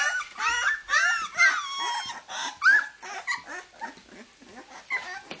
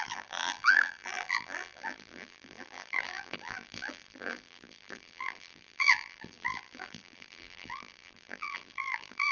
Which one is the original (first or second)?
first